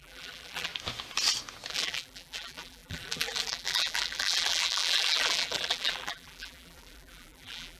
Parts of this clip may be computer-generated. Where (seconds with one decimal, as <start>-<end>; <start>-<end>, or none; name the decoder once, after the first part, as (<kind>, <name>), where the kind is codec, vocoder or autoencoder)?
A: 0.0-0.7 (vocoder, BigVGAN v2); 1.7-7.8